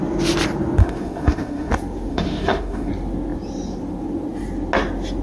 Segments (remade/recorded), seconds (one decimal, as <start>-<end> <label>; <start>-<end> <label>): 0.0-0.8 recorded; 0.8-1.7 remade; 1.7-2.1 recorded; 2.1-2.9 remade; 2.9-5.2 recorded